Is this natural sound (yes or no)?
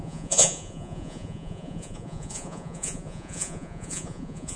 no